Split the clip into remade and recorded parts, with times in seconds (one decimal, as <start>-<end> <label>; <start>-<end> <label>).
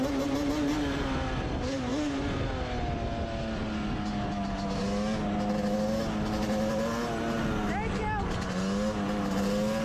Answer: 0.0-9.8 recorded